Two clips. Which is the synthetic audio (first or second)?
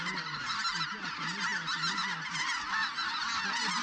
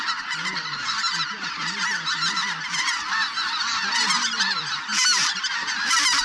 second